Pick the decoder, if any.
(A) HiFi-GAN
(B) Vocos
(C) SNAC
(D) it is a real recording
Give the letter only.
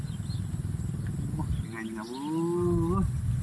D